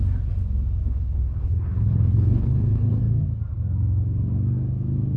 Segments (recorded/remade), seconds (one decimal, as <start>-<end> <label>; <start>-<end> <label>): 0.0-0.8 recorded; 0.8-3.0 remade; 3.0-5.2 recorded

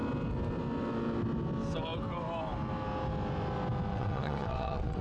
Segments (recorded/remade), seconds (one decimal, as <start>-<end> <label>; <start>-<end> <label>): 0.0-3.9 recorded; 3.9-5.0 remade

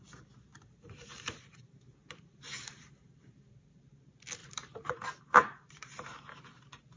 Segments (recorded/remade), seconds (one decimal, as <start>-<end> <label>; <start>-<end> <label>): 0.0-0.5 recorded; 0.5-4.0 remade; 4.0-4.4 recorded; 4.4-5.9 remade; 5.9-7.0 recorded

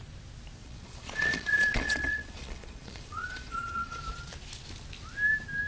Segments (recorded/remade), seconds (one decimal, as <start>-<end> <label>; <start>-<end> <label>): 0.0-0.6 recorded; 0.6-4.0 remade; 4.0-5.7 recorded

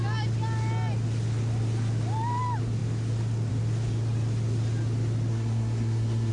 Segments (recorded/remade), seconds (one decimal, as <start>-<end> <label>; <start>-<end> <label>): 0.0-5.3 recorded; 5.3-6.3 remade

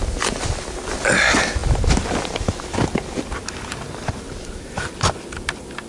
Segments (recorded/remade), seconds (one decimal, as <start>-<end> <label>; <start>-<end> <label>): 0.0-1.6 recorded; 1.6-5.1 remade; 5.1-5.9 recorded

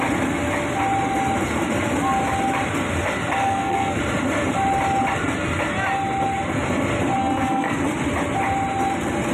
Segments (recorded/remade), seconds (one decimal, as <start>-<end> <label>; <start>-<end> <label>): 0.0-3.4 recorded; 3.4-4.0 remade; 4.0-7.2 recorded; 7.2-7.8 remade; 7.8-9.3 recorded

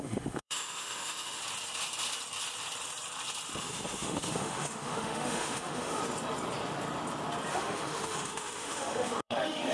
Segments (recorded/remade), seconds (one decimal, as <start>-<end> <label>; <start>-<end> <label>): 0.0-1.4 remade; 1.4-3.6 recorded; 3.6-6.0 remade; 6.0-7.5 recorded; 7.5-9.7 remade